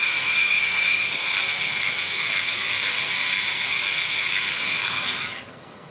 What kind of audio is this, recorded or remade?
remade